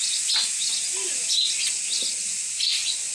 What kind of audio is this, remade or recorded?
recorded